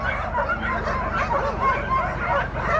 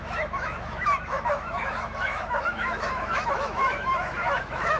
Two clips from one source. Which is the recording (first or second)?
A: first